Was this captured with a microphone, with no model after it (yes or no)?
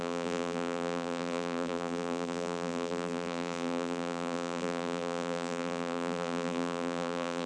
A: no